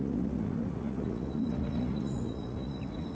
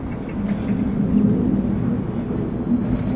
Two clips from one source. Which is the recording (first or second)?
second